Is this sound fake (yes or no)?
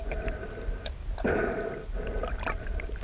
no